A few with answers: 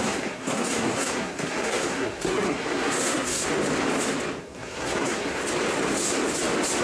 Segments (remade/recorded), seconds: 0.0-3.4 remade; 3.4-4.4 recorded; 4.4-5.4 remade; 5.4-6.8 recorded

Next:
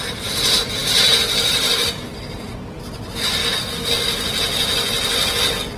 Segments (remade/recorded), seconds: 0.0-3.4 remade; 3.4-5.8 recorded

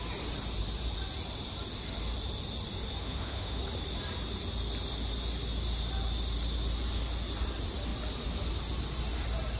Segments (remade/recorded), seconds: 0.0-3.0 recorded; 3.0-3.6 remade; 3.6-9.6 recorded

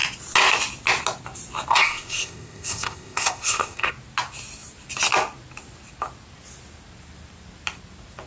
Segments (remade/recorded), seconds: 0.0-1.7 recorded; 1.7-3.9 remade; 3.9-8.3 recorded

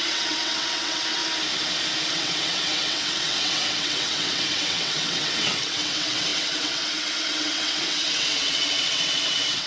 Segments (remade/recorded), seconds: 0.0-1.2 remade; 1.2-2.1 recorded; 2.1-9.7 remade